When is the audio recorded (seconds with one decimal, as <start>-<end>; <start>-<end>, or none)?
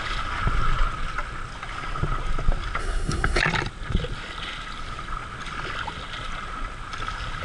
0.0-2.8; 3.4-7.4